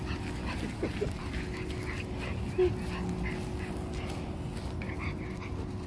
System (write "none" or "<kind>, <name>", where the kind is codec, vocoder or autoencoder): none